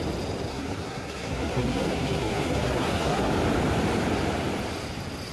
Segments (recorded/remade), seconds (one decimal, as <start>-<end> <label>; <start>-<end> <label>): 0.0-0.5 recorded; 0.5-3.3 remade; 3.3-5.3 recorded